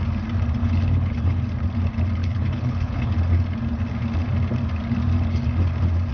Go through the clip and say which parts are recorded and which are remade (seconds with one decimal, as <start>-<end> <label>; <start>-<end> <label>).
0.0-0.6 recorded; 0.6-1.4 remade; 1.4-2.2 recorded; 2.2-3.1 remade; 3.1-6.1 recorded